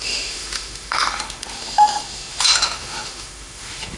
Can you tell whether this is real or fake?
fake